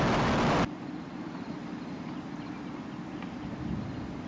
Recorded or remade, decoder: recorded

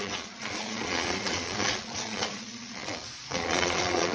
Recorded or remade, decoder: remade, vocoder, Vocos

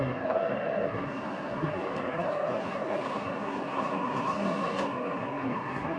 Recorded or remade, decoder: remade, codec, SNAC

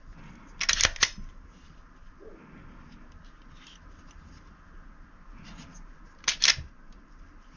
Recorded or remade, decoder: recorded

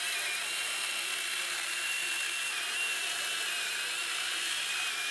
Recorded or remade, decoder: recorded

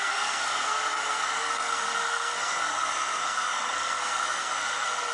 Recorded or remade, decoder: remade, codec, SNAC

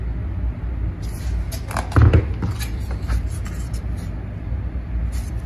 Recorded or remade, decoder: recorded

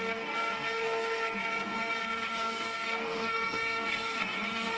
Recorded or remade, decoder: remade, codec, SNAC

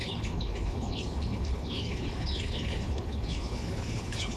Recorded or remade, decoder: remade, codec, HILCodec